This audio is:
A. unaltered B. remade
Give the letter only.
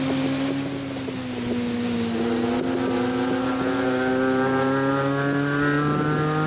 A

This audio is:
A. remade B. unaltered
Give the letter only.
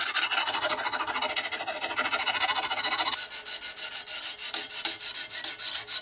B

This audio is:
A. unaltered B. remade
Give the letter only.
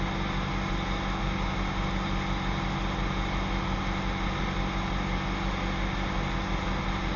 A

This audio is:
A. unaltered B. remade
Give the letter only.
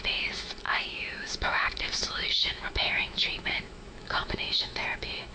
B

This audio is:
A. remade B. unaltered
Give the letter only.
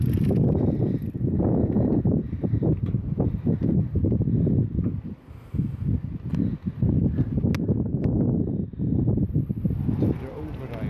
B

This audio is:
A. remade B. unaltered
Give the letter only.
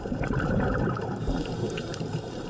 A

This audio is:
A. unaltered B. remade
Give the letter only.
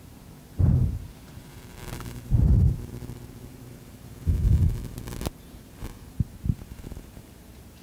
B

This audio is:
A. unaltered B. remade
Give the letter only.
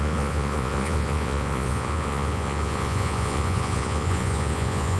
B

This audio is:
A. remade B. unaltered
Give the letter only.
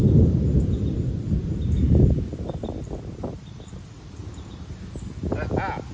B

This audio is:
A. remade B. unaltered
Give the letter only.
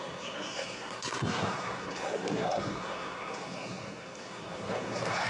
A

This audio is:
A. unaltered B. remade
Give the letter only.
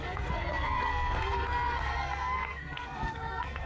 B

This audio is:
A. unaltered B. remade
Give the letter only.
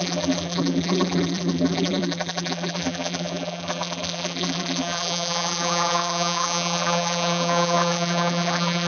B